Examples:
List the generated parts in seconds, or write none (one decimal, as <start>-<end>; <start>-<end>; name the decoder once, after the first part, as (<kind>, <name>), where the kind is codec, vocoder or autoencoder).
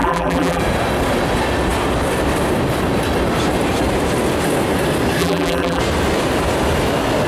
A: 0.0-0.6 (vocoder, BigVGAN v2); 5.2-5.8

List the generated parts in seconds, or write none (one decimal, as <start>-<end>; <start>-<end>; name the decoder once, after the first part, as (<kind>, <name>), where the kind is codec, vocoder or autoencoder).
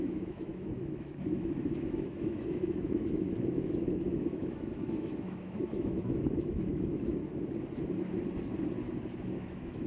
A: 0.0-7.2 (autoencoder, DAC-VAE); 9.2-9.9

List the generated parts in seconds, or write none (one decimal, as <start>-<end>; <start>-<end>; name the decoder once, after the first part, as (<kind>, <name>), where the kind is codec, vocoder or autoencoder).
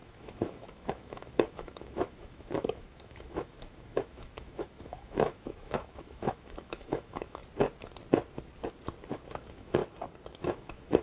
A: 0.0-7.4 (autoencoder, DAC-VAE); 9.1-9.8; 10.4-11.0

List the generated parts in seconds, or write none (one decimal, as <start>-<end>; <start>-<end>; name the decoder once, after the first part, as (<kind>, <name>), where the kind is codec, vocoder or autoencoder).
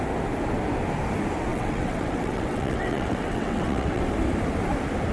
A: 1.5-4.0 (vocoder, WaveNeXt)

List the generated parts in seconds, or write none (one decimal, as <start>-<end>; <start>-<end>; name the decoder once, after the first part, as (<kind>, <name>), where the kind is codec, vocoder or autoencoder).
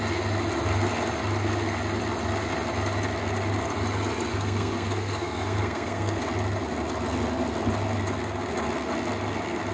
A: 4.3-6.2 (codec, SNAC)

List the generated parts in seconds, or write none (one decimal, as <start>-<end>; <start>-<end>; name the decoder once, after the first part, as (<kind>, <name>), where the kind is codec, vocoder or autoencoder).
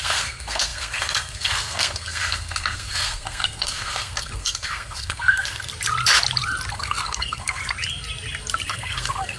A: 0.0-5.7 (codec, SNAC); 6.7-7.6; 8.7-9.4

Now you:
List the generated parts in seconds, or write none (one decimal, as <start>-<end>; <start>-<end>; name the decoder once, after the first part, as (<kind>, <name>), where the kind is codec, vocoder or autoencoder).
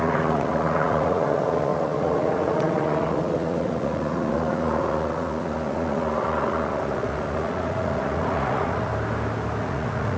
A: 0.0-8.9 (vocoder, Vocos); 9.6-10.2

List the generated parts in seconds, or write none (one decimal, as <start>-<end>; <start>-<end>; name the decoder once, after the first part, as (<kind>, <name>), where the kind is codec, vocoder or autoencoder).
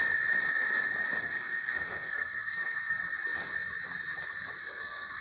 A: 1.2-2.9 (codec, SNAC); 4.6-5.2